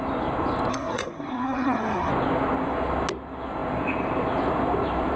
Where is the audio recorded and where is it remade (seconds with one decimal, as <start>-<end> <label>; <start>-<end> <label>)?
0.0-0.7 recorded; 0.7-2.1 remade; 2.1-5.2 recorded